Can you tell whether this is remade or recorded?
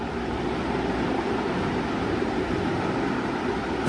remade